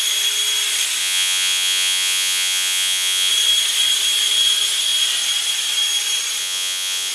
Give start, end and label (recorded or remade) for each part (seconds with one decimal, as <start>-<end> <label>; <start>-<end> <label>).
0.0-1.0 recorded; 1.0-3.3 remade; 3.3-6.4 recorded; 6.4-7.1 remade